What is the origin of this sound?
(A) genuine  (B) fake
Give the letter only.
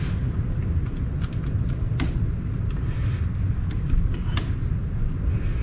A